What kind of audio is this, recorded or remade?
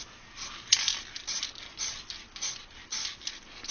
recorded